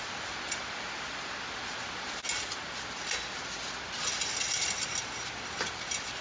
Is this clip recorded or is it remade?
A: recorded